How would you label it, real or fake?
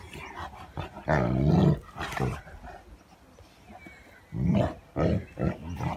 real